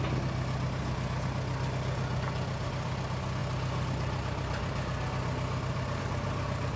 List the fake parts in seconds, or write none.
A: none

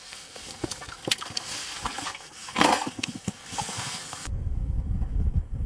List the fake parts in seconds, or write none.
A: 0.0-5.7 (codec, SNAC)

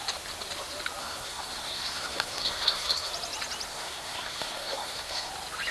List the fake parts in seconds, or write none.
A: 1.0-3.1 (codec, SNAC); 3.7-5.3

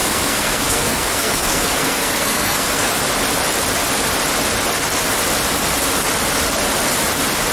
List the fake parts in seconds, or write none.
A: 0.0-2.9 (codec, SNAC)

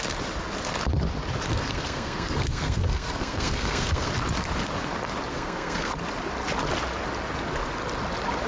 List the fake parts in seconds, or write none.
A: 1.5-4.1 (codec, SNAC); 5.3-5.9

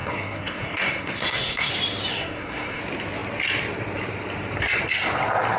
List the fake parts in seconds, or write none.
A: 0.0-1.7 (codec, SNAC); 2.1-2.8

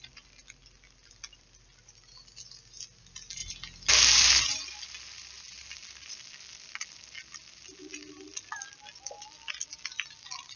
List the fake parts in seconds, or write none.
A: none

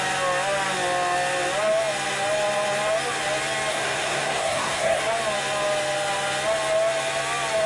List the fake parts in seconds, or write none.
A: 3.7-5.0 (codec, SNAC)